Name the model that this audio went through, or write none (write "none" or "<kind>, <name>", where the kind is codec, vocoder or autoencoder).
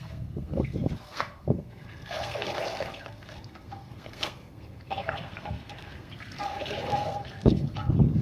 codec, SNAC